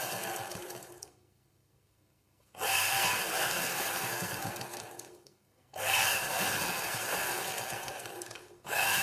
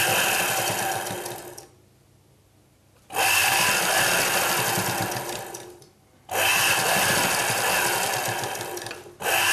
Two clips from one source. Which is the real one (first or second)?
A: second